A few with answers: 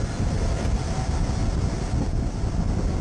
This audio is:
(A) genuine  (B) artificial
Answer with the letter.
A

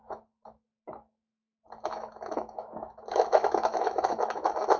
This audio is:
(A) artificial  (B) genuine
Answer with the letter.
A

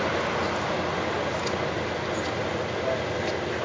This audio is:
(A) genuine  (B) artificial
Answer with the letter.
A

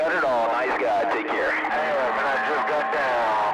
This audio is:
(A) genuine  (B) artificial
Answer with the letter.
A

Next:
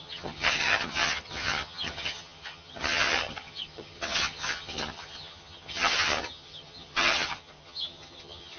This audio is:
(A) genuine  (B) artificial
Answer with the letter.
B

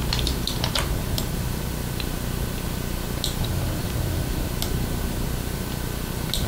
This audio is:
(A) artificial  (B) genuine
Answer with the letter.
B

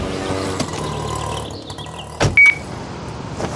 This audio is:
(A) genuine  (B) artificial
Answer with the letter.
A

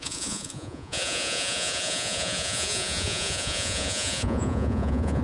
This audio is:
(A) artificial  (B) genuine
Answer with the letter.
A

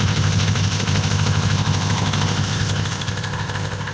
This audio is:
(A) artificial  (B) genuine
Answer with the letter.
A